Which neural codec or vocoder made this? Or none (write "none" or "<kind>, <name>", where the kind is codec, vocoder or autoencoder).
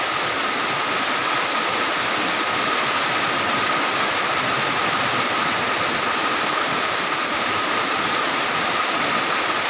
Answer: none